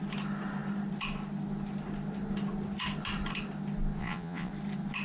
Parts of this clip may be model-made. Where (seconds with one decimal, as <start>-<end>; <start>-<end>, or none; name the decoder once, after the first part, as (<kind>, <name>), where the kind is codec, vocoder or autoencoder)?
4.0-4.5 (vocoder, Vocos)